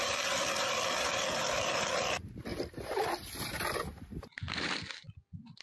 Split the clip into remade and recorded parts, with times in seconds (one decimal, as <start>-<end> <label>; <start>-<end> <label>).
0.0-5.6 recorded